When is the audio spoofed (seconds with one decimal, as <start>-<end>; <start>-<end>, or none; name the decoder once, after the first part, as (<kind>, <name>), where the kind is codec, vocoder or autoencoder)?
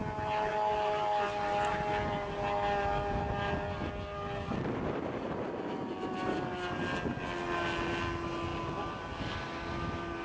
none